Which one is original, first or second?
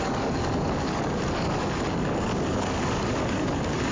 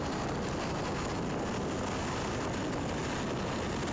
second